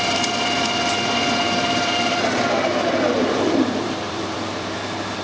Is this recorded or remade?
remade